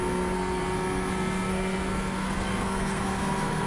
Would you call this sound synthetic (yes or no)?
yes